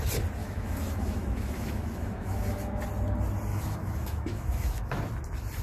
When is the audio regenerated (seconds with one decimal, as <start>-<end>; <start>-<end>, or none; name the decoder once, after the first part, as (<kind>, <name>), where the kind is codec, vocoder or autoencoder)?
0.4-2.8 (autoencoder, DAC-VAE); 3.5-5.0